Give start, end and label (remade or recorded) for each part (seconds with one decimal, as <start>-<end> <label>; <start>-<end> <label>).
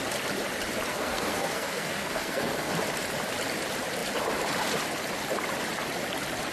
0.0-0.9 recorded; 0.9-2.7 remade; 2.7-6.5 recorded